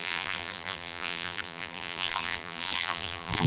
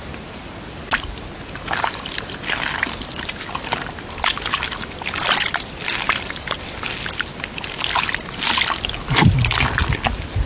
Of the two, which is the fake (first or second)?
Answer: first